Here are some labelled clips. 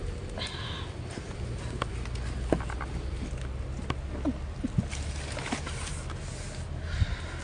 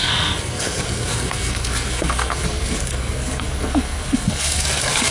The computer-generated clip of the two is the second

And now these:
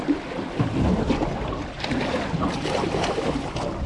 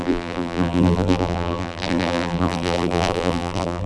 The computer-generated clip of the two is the second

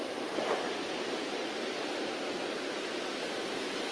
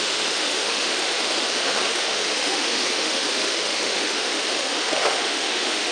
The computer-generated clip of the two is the second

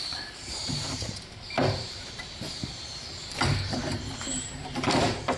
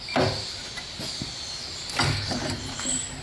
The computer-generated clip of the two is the first